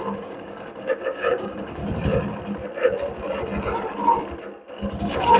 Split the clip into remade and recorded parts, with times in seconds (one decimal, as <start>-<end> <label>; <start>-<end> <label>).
0.0-1.8 remade; 1.8-5.0 recorded; 5.0-5.4 remade